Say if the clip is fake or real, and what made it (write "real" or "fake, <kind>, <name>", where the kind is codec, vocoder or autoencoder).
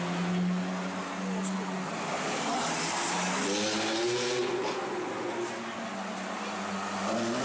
real